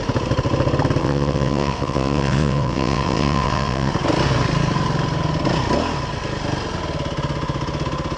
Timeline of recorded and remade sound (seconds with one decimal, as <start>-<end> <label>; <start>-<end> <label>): 0.0-1.0 recorded; 1.0-3.9 remade; 3.9-8.2 recorded

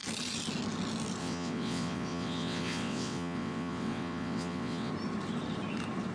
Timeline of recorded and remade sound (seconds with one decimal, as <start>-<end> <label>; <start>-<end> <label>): 0.0-1.2 recorded; 1.2-4.9 remade; 4.9-6.1 recorded

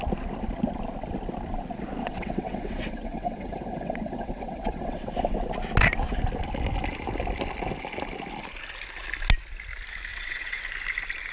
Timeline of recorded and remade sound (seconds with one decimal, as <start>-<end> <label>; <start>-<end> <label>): 0.0-2.0 recorded; 2.0-5.1 remade; 5.1-10.1 recorded; 10.1-10.6 remade; 10.6-11.3 recorded

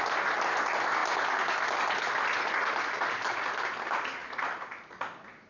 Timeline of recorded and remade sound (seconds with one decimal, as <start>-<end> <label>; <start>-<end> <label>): 0.0-5.5 recorded